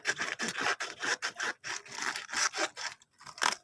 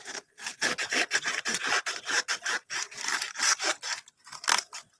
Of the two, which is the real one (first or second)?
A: first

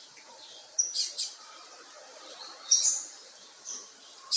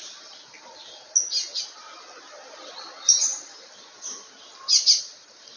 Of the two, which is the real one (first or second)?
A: second